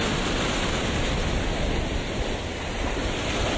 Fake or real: real